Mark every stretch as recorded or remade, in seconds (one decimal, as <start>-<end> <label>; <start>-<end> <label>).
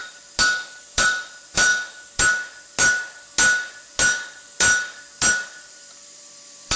0.0-0.8 recorded; 0.8-1.7 remade; 1.7-5.3 recorded; 5.3-6.8 remade